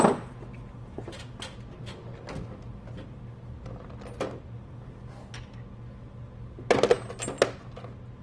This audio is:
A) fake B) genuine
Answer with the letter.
B